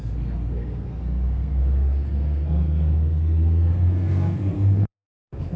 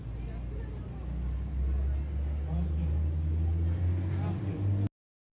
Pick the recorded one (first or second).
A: second